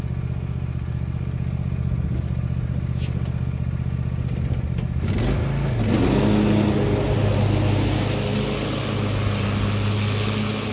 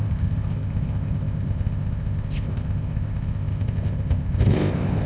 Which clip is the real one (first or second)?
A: first